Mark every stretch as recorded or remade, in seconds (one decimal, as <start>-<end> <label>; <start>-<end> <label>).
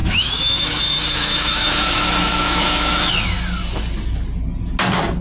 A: 0.0-3.1 remade; 3.1-5.2 recorded